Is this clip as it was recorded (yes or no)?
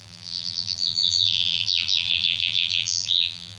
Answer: no